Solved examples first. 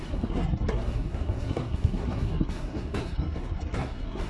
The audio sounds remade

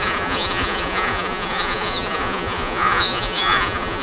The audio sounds remade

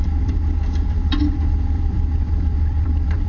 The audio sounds remade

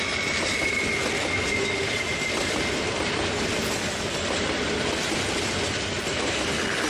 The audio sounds recorded